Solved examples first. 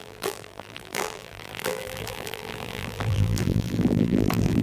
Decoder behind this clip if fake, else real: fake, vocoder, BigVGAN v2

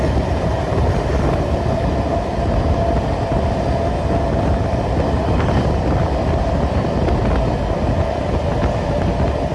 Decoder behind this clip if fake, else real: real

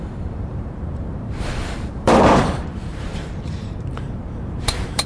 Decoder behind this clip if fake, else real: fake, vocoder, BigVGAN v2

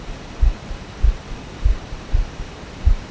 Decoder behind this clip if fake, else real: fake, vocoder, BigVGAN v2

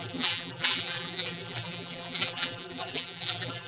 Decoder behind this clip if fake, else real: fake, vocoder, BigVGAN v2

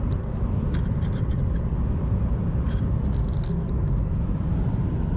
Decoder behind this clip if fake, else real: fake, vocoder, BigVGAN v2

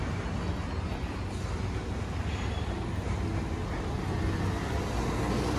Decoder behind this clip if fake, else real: real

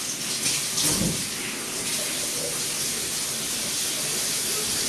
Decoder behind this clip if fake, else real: real